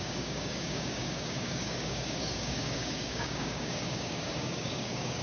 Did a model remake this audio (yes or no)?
yes